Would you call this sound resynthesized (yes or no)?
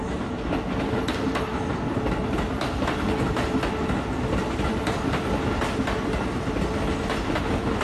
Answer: no